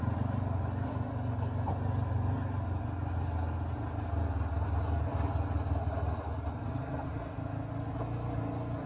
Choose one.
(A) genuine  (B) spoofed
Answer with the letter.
A